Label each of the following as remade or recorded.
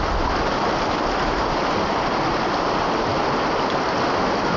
recorded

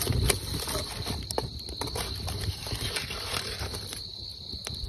recorded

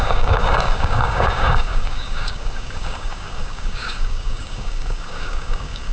remade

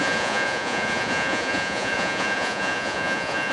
remade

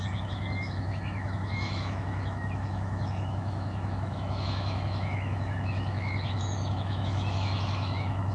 remade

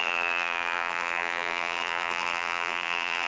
remade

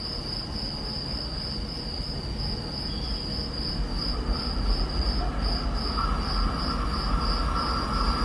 recorded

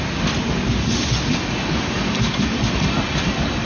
recorded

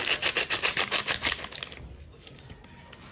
recorded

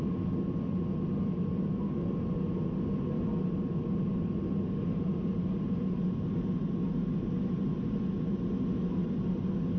recorded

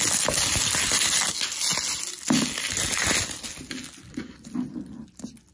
recorded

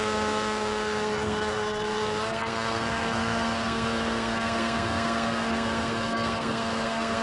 remade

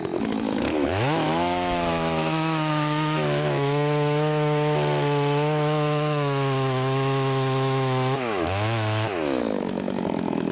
remade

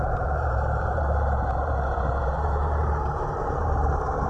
remade